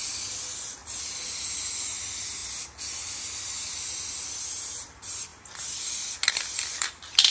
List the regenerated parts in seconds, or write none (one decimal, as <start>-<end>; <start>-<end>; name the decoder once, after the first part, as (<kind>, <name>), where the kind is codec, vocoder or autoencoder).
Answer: none